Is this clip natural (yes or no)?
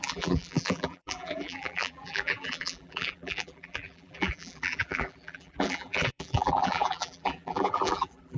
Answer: no